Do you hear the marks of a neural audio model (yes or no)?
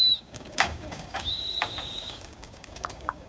yes